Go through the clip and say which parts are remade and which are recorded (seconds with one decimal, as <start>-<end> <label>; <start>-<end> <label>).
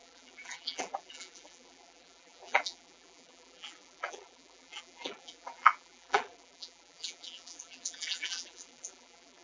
0.0-9.4 remade